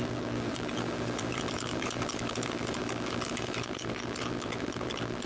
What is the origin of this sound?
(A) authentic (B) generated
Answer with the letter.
B